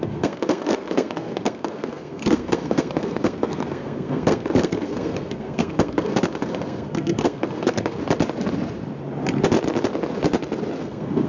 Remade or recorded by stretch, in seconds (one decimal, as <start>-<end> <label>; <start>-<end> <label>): 0.0-8.0 remade; 8.0-10.8 recorded; 10.8-11.3 remade